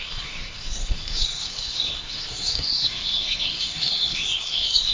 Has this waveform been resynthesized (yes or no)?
yes